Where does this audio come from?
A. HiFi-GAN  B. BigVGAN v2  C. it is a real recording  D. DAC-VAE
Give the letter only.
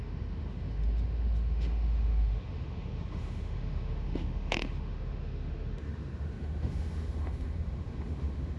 D